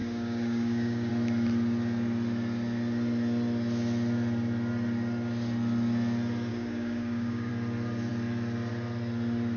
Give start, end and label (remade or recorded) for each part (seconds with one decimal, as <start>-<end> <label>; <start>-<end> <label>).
0.0-1.1 remade; 1.1-6.5 recorded; 6.5-7.5 remade; 7.5-9.6 recorded

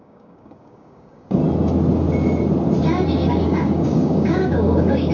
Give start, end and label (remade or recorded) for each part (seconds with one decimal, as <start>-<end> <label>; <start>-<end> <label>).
0.0-1.4 remade; 1.4-3.3 recorded; 3.3-5.1 remade

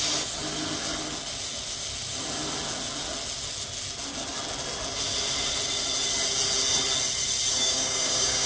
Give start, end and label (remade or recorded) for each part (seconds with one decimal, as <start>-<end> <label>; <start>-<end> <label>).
0.0-7.5 recorded; 7.5-8.5 remade

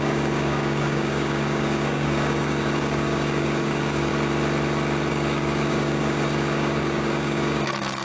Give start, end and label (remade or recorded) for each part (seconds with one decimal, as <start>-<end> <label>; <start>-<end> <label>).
0.0-4.1 remade; 4.1-5.1 recorded; 5.1-8.0 remade

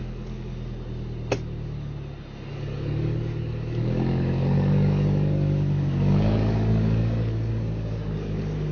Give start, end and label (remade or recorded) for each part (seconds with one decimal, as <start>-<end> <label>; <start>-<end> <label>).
0.0-0.5 remade; 0.5-2.5 recorded; 2.5-8.7 remade

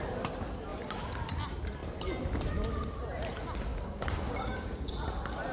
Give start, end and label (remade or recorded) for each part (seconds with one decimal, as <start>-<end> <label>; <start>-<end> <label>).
0.0-3.7 recorded; 3.7-4.9 remade; 4.9-5.5 recorded